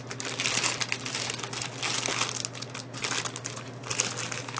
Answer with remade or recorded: recorded